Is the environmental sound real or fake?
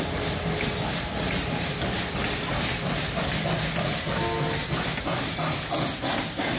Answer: real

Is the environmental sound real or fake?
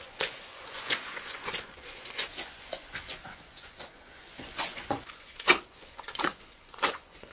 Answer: fake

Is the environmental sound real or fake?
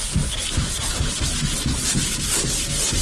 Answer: real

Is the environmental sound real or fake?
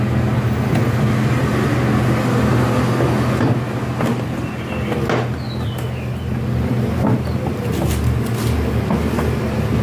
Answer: real